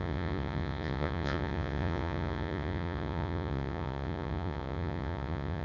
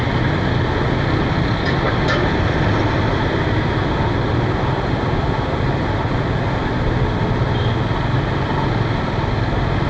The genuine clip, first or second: second